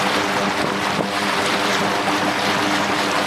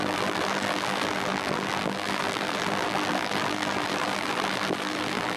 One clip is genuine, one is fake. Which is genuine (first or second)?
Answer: first